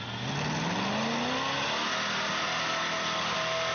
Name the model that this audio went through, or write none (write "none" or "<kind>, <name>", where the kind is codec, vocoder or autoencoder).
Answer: none